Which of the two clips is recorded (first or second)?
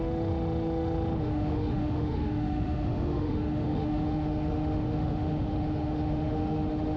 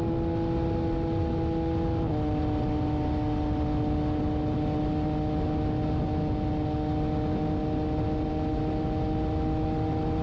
second